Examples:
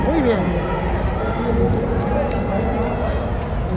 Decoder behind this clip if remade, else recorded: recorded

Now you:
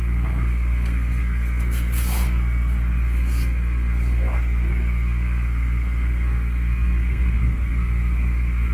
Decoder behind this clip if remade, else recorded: remade, codec, SNAC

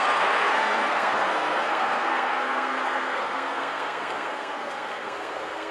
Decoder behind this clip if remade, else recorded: remade, codec, SNAC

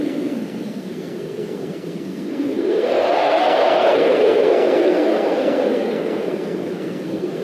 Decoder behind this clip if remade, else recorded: remade, codec, SNAC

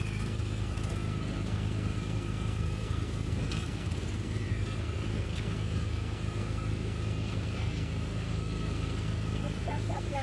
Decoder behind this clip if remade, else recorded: remade, codec, SNAC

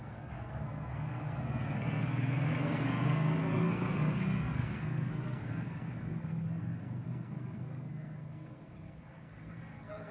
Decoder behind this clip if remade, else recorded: remade, codec, SNAC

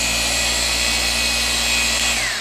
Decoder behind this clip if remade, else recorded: recorded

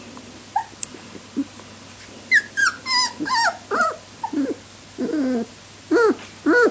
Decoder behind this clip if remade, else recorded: recorded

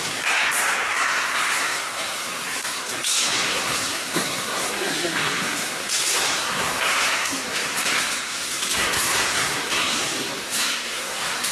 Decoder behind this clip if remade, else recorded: remade, codec, SNAC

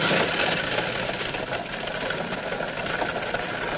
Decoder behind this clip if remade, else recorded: recorded